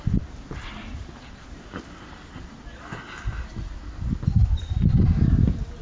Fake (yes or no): no